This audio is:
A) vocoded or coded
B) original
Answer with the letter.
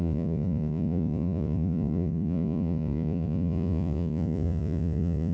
A